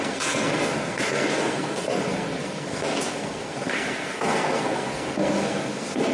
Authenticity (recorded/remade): remade